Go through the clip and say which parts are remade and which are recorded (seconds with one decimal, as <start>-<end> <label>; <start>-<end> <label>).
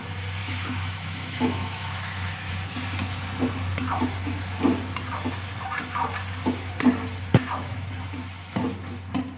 0.0-0.4 recorded; 0.4-2.5 remade; 2.5-7.3 recorded; 7.3-7.9 remade; 7.9-9.4 recorded